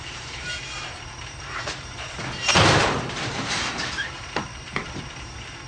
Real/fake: fake